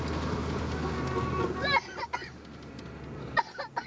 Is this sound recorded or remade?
recorded